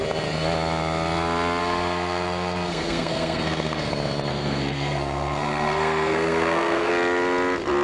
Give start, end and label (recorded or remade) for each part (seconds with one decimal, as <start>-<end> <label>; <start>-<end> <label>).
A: 0.0-1.6 recorded; 1.6-3.9 remade; 3.9-4.3 recorded; 4.3-6.9 remade; 6.9-7.8 recorded